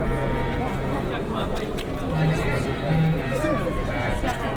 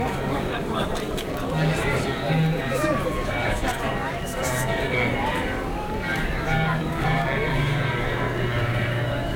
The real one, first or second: first